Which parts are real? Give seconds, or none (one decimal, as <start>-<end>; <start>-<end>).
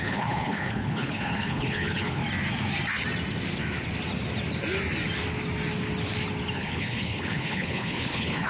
2.2-6.5